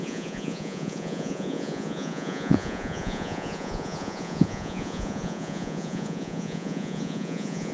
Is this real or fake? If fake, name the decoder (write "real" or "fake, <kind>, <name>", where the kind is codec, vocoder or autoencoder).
fake, vocoder, Vocos